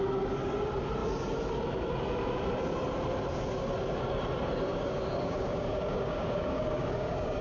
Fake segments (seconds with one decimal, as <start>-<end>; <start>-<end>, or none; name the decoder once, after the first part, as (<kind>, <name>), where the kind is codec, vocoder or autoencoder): 4.7-7.4 (codec, DAC)